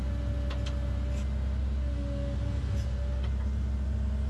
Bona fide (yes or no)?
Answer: yes